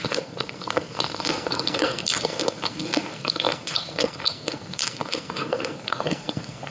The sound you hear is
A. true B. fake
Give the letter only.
B